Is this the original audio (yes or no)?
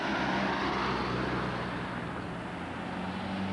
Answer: yes